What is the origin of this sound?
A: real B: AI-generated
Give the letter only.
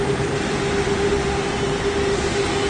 B